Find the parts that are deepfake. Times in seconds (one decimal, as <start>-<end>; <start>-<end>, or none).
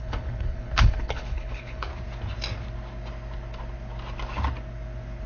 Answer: 0.0-1.9